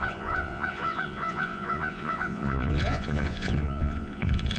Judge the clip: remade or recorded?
remade